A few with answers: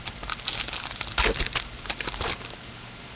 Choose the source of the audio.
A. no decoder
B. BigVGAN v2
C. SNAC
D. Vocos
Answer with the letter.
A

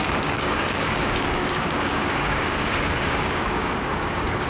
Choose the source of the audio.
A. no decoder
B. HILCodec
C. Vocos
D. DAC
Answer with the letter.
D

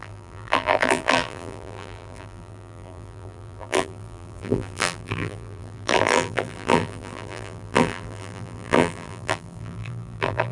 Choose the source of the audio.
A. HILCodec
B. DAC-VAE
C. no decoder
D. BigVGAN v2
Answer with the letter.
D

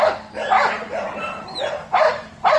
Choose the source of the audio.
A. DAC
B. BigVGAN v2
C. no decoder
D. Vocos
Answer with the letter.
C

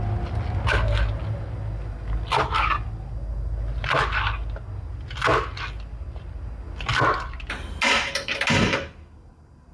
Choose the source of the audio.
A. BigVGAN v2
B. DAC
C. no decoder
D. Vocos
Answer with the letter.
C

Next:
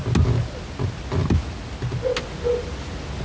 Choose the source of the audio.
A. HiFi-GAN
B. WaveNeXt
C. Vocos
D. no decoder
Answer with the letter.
D